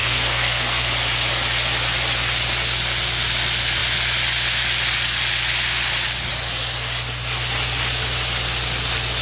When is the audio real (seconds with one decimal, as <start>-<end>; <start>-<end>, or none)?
0.9-9.2